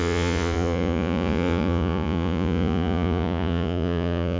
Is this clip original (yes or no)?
no